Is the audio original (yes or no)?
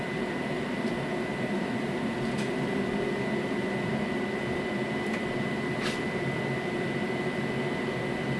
no